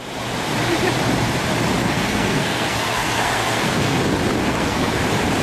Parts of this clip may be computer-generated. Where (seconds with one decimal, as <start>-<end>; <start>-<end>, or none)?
1.8-4.0; 4.4-5.0